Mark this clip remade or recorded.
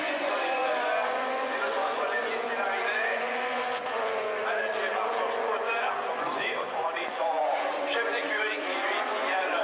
remade